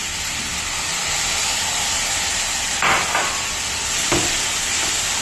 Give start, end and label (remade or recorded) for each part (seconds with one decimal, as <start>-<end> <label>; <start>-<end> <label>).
0.0-5.2 recorded